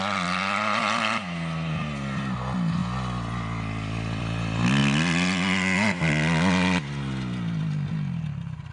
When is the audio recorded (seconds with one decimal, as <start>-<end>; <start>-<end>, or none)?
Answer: 0.0-8.7